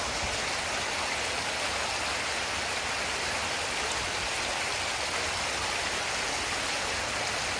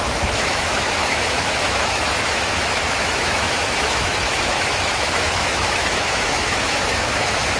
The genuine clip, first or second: first